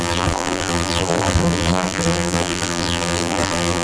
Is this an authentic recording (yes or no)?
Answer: no